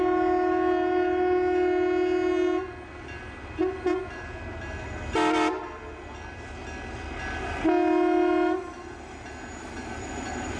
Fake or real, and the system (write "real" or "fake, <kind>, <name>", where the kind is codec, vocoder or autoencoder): real